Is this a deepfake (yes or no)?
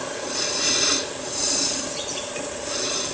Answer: no